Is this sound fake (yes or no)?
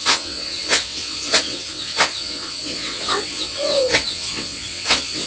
yes